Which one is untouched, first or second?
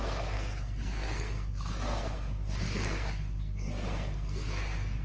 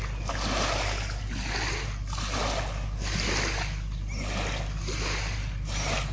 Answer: second